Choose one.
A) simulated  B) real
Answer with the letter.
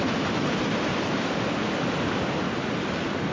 B